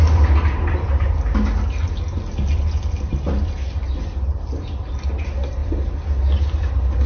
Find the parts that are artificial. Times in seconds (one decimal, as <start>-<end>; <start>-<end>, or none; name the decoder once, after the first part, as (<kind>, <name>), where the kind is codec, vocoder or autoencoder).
none

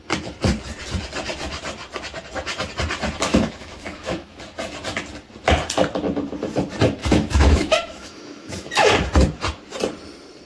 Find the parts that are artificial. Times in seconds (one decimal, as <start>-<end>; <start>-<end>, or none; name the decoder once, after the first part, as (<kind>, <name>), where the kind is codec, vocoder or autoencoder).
3.3-4.4 (autoencoder, DAC-VAE); 7.0-8.7

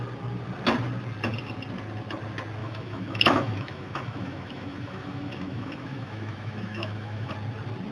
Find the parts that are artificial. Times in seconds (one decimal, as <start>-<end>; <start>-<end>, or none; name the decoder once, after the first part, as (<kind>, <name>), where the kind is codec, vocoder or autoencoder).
2.6-7.3 (autoencoder, DAC-VAE)